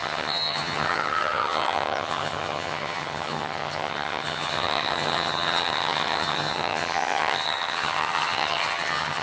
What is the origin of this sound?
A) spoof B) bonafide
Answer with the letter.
A